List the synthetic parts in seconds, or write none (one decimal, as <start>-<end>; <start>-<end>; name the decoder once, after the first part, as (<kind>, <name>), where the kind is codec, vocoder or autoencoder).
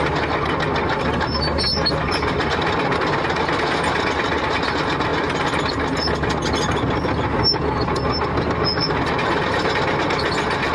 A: none